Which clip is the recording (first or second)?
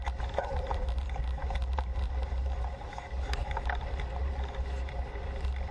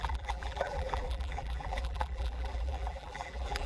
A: first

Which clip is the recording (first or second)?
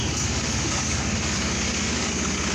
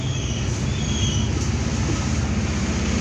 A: second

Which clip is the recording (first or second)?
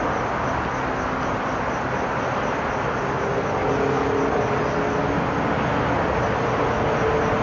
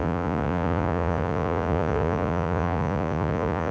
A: first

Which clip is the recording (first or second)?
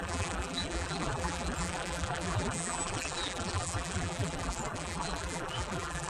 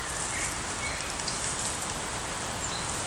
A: second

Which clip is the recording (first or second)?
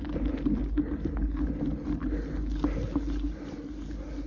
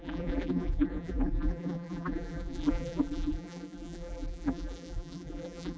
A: first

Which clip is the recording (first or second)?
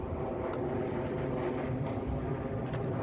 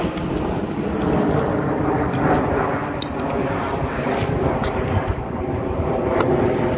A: first